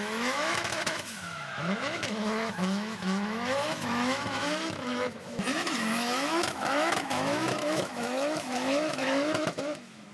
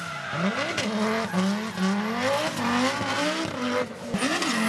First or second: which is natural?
second